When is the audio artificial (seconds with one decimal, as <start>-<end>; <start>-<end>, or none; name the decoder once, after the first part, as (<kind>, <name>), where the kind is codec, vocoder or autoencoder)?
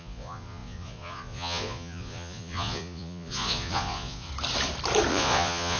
0.0-4.3 (vocoder, Vocos); 5.1-5.8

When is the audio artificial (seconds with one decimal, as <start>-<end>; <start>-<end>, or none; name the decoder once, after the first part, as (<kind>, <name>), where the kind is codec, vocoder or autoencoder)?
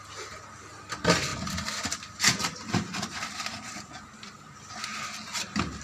none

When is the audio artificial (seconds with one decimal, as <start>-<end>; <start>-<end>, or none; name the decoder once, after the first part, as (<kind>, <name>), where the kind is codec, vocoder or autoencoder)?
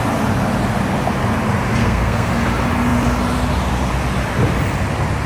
1.8-2.3 (codec, SNAC)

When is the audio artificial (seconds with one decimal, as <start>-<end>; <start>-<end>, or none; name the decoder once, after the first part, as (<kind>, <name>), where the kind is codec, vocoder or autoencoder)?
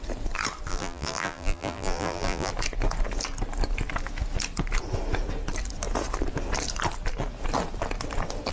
0.7-2.5 (vocoder, BigVGAN v2)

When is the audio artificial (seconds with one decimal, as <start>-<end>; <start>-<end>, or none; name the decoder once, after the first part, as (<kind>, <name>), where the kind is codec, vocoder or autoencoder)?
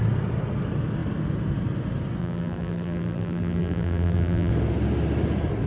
2.2-4.5 (vocoder, BigVGAN v2)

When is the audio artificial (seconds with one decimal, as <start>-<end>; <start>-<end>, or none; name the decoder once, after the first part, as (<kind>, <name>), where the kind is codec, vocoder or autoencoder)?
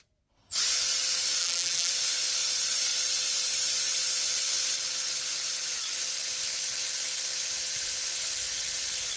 1.4-1.9 (vocoder, BigVGAN v2)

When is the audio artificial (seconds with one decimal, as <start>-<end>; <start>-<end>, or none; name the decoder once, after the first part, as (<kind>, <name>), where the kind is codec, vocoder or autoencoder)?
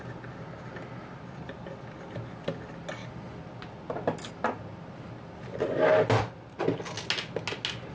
none